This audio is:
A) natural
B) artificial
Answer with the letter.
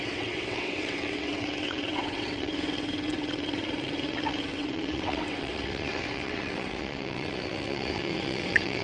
B